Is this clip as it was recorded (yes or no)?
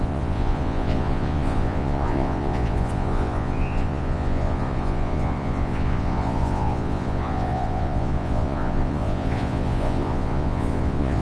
no